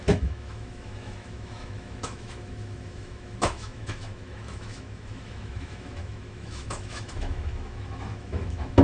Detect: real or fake fake